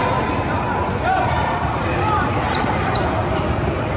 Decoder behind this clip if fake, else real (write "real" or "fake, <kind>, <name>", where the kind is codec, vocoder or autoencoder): real